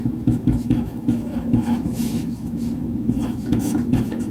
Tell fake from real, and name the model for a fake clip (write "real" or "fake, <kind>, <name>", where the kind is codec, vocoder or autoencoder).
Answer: fake, autoencoder, DAC-VAE